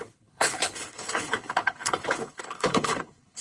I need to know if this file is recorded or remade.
remade